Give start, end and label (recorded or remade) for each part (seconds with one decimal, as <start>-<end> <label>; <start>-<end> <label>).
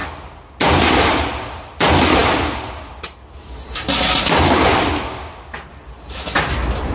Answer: 0.0-6.9 recorded